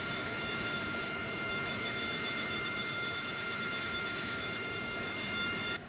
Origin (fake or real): fake